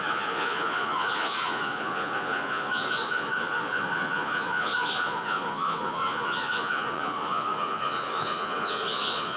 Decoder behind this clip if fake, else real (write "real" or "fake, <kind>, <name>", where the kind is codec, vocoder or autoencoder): fake, vocoder, Vocos